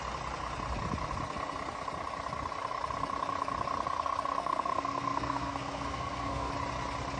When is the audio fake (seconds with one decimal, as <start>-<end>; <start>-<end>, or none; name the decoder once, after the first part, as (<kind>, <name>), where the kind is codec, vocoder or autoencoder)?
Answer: 4.4-6.5 (codec, SNAC)